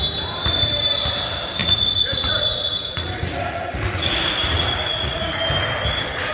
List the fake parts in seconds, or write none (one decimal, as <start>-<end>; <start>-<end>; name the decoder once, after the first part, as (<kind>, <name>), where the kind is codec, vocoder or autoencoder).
1.6-5.4 (vocoder, Vocos)